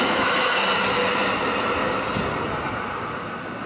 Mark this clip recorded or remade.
recorded